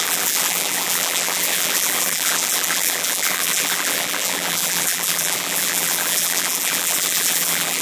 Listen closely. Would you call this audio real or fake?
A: fake